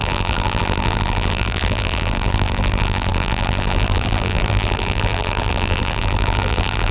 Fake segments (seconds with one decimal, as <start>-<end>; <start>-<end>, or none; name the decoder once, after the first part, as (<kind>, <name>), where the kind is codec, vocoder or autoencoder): 0.0-6.9 (vocoder, BigVGAN v2)